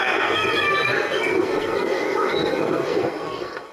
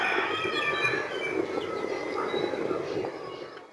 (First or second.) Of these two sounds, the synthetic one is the first